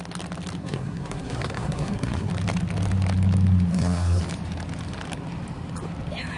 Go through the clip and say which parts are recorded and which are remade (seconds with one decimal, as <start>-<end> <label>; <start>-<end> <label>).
0.0-0.6 recorded; 0.6-2.3 remade; 2.3-3.7 recorded; 3.7-4.2 remade; 4.2-6.4 recorded